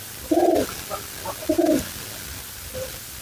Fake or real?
real